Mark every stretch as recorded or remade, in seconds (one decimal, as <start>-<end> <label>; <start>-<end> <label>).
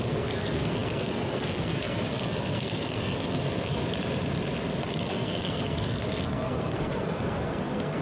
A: 0.0-3.8 remade; 3.8-4.9 recorded; 4.9-8.0 remade